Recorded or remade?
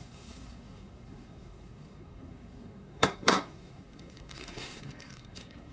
remade